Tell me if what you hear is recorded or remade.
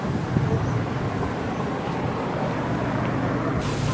recorded